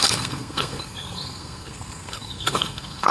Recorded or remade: remade